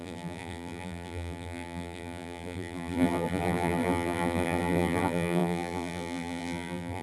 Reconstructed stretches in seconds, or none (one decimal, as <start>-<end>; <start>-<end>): 0.0-7.0